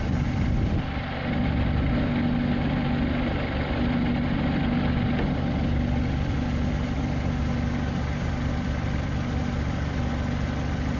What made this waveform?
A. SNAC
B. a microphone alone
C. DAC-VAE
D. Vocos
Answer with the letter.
B